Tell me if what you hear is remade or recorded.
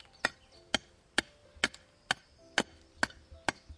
recorded